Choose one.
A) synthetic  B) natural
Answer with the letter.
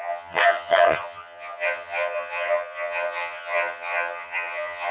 A